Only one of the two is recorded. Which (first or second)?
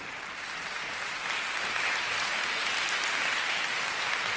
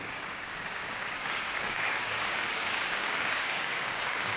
first